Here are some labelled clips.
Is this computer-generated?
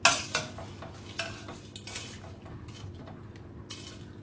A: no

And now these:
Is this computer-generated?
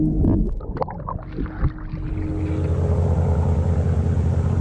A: no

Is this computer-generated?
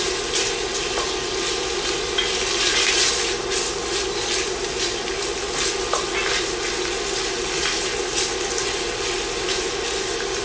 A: no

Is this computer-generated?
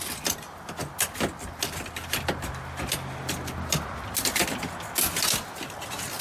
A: no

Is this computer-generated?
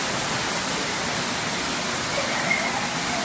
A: no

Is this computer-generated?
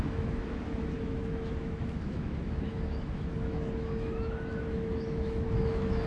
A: yes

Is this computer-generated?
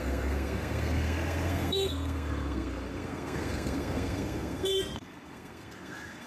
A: yes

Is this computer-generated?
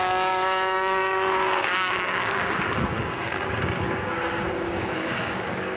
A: yes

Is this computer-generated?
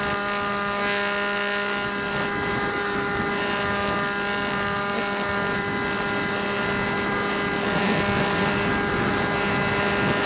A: no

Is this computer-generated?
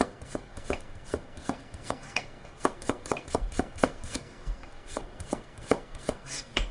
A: yes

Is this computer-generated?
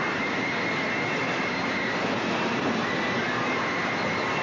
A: no